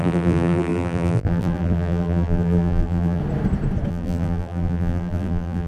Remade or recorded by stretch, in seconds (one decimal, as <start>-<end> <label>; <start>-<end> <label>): 0.0-3.2 remade; 3.2-3.9 recorded; 3.9-5.7 remade